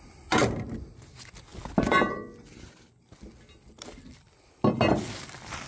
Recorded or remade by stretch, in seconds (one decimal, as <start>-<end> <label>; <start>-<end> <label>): 0.0-5.7 recorded